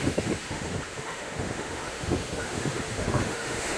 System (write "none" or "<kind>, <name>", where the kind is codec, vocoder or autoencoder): autoencoder, DAC-VAE